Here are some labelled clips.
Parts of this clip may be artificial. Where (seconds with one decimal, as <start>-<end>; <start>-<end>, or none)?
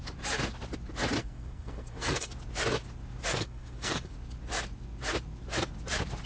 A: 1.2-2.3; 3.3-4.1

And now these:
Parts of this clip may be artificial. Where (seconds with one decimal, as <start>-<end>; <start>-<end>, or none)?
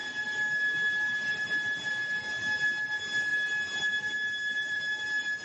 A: 4.5-5.0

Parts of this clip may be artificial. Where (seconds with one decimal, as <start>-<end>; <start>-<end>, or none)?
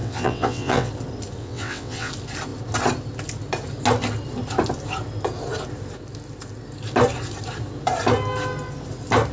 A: 0.0-0.9; 1.4-2.1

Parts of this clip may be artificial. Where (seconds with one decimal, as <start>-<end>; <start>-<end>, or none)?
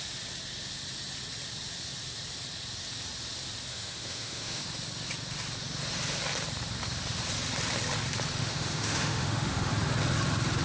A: 3.7-4.6; 8.4-9.7